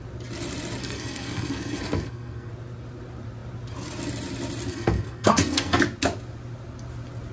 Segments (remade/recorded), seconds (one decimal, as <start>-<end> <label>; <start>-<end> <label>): 0.0-0.8 recorded; 0.8-2.5 remade; 2.5-4.7 recorded; 4.7-5.8 remade; 5.8-7.3 recorded